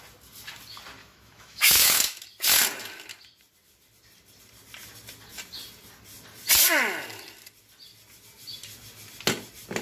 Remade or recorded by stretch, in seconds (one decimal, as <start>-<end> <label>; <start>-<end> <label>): 0.0-1.0 recorded; 1.0-2.2 remade; 2.2-9.8 recorded